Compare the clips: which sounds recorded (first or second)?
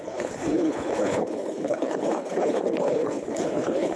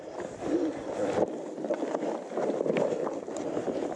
second